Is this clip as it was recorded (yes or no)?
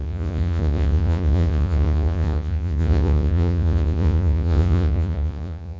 no